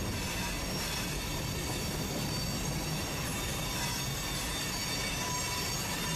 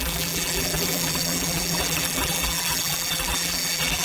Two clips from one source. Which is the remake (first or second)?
second